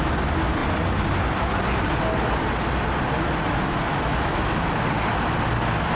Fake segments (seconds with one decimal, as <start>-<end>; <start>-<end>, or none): 3.9-4.7